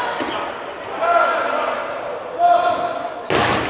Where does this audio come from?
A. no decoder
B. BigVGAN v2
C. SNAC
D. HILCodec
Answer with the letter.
A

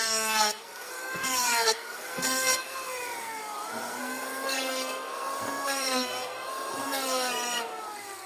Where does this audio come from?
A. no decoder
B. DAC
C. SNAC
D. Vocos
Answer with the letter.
C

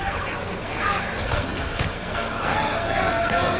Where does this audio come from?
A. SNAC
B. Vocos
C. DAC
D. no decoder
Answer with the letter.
A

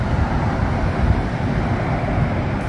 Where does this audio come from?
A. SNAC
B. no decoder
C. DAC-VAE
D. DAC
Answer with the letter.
B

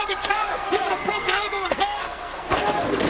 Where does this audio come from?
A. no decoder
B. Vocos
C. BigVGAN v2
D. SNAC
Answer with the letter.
D